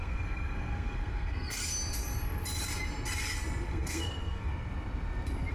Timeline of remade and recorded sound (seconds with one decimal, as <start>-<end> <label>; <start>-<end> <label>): 0.0-1.6 remade; 1.6-3.7 recorded; 3.7-4.5 remade; 4.5-5.5 recorded